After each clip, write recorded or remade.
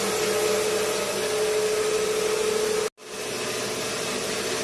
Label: recorded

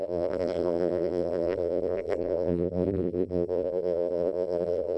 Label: remade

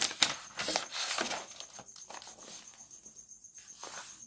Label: recorded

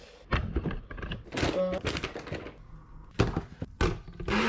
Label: recorded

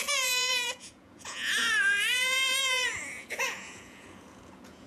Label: remade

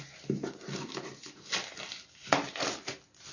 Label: recorded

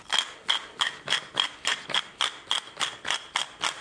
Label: recorded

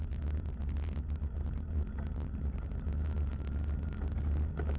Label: recorded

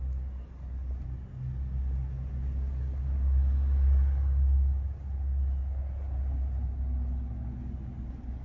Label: recorded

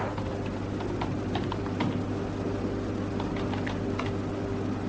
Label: recorded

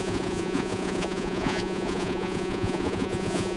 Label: remade